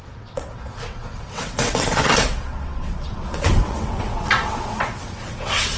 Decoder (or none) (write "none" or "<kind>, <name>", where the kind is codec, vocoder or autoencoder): vocoder, WaveNeXt